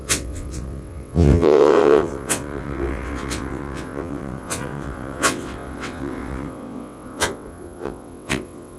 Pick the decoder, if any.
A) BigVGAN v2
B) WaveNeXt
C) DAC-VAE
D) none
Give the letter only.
B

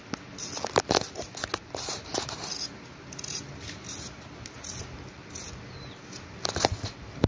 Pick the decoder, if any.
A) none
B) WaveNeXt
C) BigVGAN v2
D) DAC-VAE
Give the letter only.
A